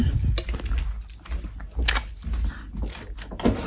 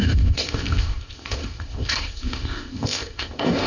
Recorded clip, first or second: first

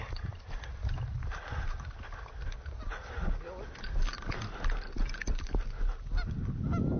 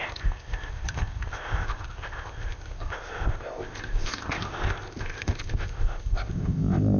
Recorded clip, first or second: first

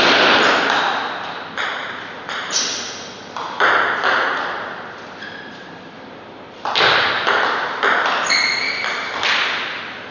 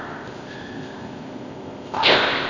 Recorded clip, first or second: first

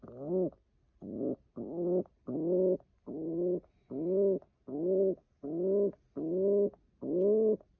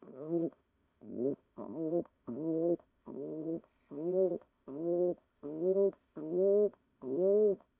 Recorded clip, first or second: first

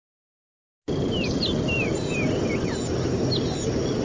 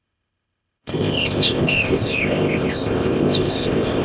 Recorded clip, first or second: first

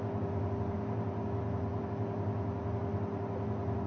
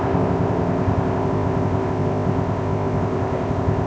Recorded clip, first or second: first